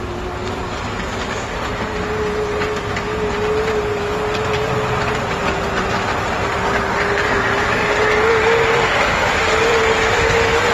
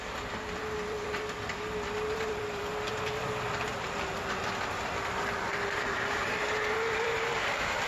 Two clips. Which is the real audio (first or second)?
first